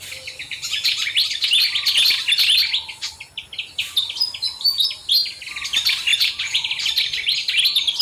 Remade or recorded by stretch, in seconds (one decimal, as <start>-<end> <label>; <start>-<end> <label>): 0.0-0.4 recorded; 0.4-1.1 remade; 1.1-6.1 recorded; 6.1-6.7 remade; 6.7-8.0 recorded